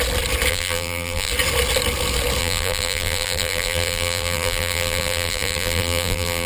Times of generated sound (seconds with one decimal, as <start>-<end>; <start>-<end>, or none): 0.5-1.3; 2.4-6.5